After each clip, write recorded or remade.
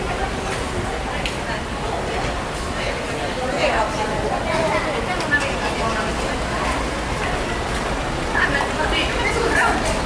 recorded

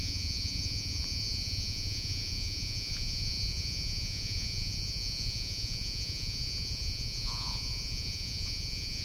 remade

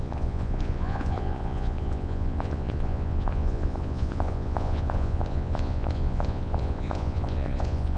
remade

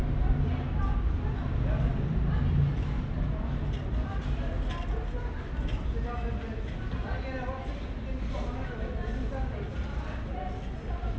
recorded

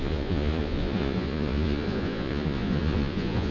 remade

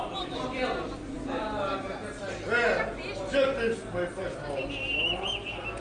recorded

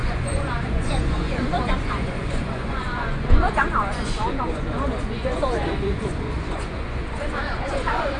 remade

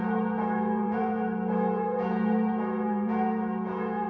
remade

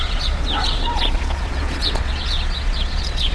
remade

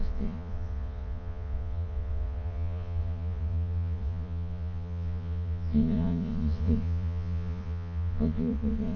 remade